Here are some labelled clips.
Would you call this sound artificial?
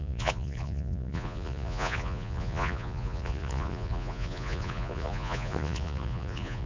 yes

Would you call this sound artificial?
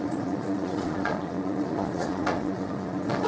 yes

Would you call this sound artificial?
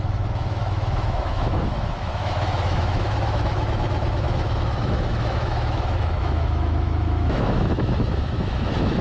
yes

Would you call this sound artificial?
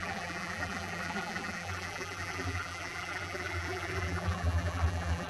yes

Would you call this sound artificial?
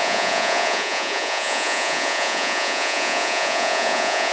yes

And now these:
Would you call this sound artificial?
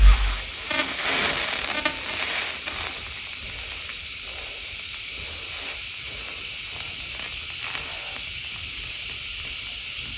no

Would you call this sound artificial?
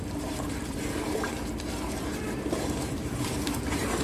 yes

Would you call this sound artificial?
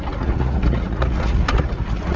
yes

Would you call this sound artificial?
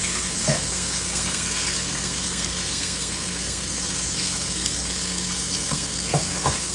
yes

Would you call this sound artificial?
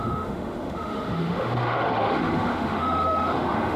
yes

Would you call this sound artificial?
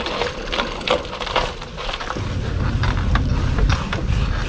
no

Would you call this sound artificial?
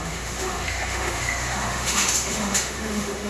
yes